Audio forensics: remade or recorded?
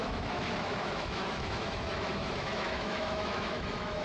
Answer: remade